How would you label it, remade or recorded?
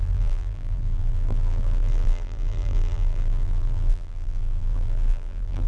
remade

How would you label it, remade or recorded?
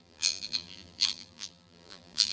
remade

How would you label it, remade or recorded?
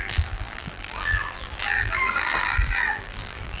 remade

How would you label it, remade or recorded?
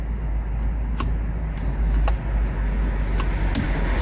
recorded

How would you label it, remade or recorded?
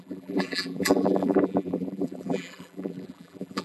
remade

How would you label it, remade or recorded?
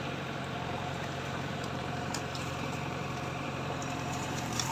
remade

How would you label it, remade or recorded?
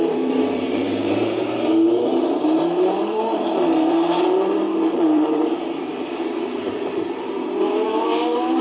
remade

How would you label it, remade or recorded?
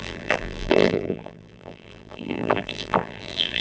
remade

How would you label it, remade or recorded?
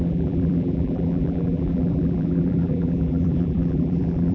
remade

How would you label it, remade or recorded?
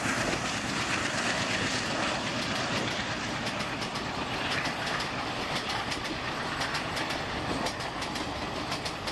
remade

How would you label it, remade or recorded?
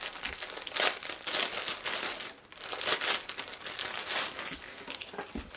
recorded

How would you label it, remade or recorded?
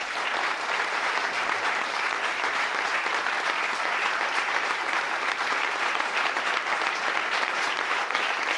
remade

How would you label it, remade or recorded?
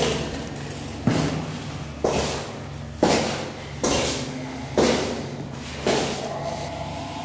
recorded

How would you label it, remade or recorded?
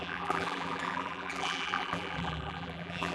remade